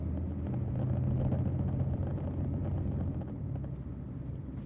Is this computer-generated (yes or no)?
no